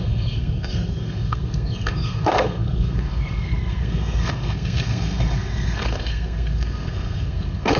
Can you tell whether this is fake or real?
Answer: fake